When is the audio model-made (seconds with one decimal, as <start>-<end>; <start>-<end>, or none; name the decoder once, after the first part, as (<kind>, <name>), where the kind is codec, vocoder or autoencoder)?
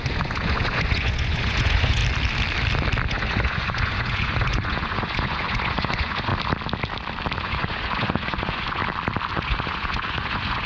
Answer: 0.0-2.0 (vocoder, Vocos); 3.1-6.3; 7.4-8.8; 9.3-10.7